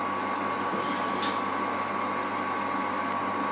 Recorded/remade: recorded